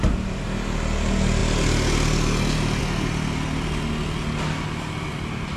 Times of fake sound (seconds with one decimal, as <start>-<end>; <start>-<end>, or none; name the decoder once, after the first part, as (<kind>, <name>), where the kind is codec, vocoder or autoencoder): none